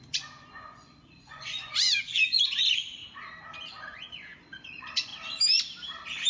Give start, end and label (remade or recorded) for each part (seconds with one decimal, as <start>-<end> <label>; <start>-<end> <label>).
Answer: 0.0-3.0 remade; 3.0-3.7 recorded; 3.7-5.1 remade; 5.1-6.3 recorded